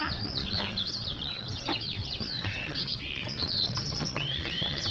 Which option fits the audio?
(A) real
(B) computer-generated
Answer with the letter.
B